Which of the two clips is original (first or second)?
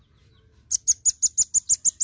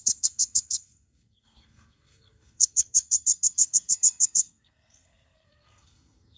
first